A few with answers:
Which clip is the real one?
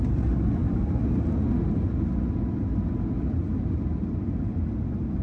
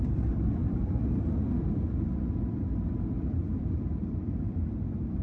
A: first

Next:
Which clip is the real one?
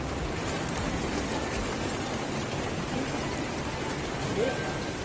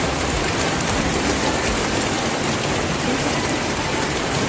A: first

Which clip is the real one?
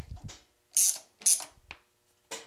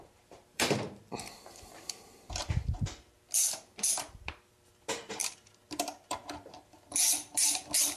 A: first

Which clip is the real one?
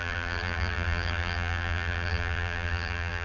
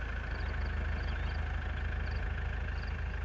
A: second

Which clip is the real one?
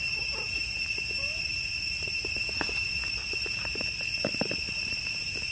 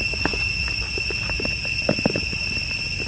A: second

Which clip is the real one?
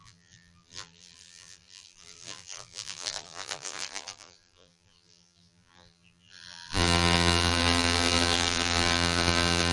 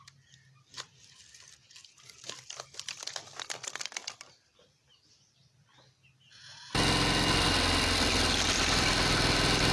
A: second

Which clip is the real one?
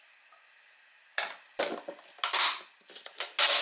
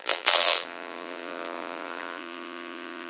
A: first